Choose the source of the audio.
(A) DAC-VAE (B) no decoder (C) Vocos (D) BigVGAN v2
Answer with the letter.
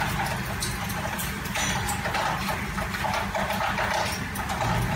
B